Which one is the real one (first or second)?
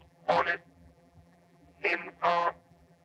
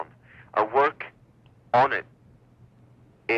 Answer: second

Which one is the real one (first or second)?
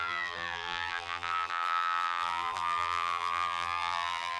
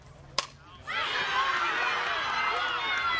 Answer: second